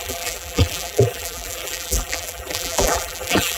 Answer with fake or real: fake